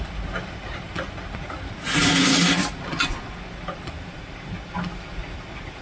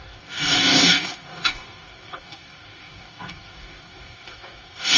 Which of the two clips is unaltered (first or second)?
first